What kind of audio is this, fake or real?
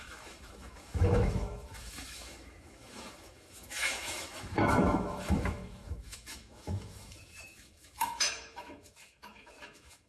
fake